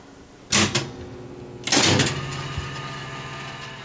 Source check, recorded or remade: recorded